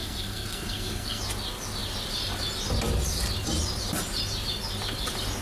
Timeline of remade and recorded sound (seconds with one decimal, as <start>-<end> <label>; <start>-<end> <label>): 0.0-1.2 remade; 1.2-5.4 recorded

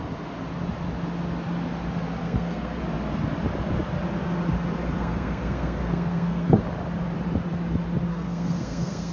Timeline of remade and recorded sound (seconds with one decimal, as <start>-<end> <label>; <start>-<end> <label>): 0.0-2.2 recorded; 2.2-2.8 remade; 2.8-5.0 recorded; 5.0-6.6 remade; 6.6-8.1 recorded; 8.1-9.1 remade

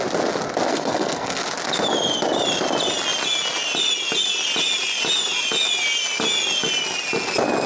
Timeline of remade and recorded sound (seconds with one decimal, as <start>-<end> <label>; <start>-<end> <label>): 0.0-0.7 recorded; 0.7-1.4 remade; 1.4-7.7 recorded

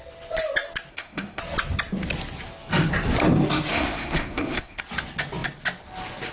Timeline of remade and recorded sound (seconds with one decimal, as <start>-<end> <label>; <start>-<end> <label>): 0.0-0.9 recorded; 0.9-1.4 remade; 1.4-3.7 recorded; 3.7-4.8 remade; 4.8-6.3 recorded

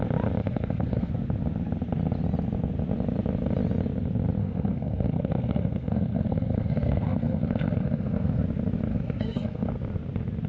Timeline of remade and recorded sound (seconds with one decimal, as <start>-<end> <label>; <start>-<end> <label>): 0.0-0.4 recorded; 0.4-1.1 remade; 1.1-4.4 recorded; 4.4-8.4 remade; 8.4-8.9 recorded; 8.9-9.7 remade; 9.7-10.5 recorded

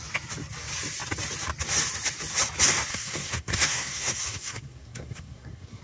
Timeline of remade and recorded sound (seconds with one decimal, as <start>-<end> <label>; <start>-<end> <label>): 0.0-2.9 recorded; 2.9-5.8 remade